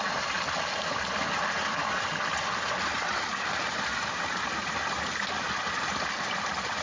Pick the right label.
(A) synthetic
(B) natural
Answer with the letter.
B